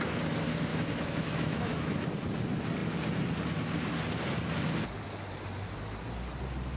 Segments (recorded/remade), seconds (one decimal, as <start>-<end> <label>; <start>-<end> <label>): 0.0-0.7 recorded; 0.7-2.1 remade; 2.1-6.8 recorded